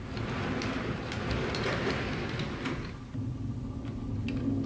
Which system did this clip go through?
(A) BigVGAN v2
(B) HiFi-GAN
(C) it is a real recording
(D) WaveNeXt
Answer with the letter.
C